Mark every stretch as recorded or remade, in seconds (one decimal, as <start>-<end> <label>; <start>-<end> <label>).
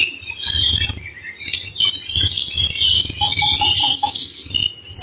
0.0-3.8 recorded; 3.8-4.5 remade; 4.5-5.0 recorded